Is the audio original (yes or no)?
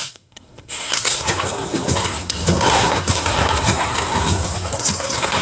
no